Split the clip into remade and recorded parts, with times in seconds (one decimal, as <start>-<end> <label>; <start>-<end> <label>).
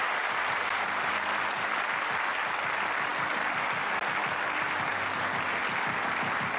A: 0.0-6.6 recorded